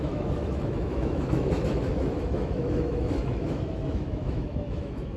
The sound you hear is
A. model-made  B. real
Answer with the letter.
A